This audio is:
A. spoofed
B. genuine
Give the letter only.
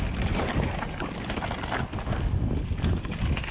B